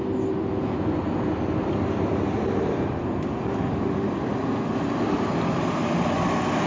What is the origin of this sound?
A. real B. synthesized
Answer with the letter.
A